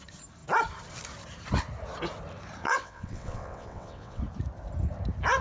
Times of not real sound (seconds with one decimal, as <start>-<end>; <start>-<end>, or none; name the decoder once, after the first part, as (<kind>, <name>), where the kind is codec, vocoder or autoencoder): 2.6-4.2 (vocoder, WaveNeXt)